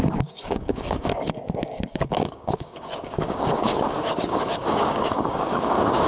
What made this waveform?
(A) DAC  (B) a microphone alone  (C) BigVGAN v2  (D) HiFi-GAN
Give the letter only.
A